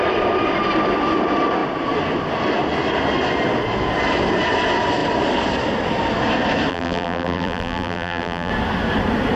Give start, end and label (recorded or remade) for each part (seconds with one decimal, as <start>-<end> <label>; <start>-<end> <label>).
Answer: 0.0-6.7 recorded; 6.7-8.5 remade; 8.5-9.4 recorded